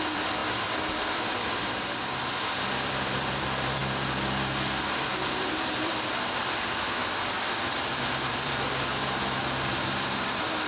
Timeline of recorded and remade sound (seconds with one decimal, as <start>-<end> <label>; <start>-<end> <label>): 0.0-7.0 remade; 7.0-7.5 recorded; 7.5-10.7 remade